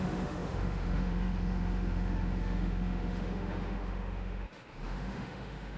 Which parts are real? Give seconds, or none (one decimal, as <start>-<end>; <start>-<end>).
none

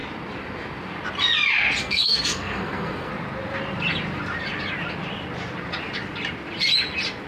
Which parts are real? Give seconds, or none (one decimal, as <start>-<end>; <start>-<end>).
0.0-1.8; 3.1-7.3

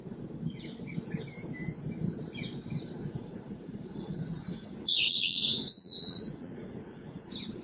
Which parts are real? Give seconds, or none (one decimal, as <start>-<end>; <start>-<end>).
0.0-3.0

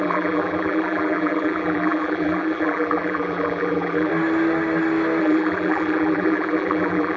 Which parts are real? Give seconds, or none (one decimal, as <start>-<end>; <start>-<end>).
4.1-5.2